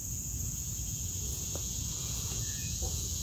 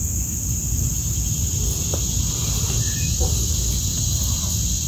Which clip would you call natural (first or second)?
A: second